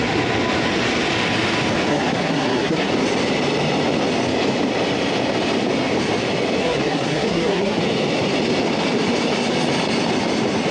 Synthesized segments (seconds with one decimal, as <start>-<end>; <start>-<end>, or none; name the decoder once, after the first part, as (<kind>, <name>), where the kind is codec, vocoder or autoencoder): 1.9-2.9 (codec, SNAC); 6.6-7.8